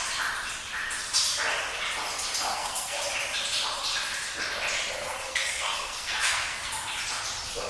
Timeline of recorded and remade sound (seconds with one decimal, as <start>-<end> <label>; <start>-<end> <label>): 0.0-2.5 recorded; 2.5-3.0 remade; 3.0-5.0 recorded; 5.0-6.7 remade; 6.7-7.7 recorded